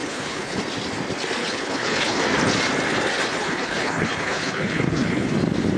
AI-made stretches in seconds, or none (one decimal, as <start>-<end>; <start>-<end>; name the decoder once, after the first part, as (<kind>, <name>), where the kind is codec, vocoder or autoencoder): 0.0-0.6 (codec, HILCodec); 1.4-2.2; 3.4-5.3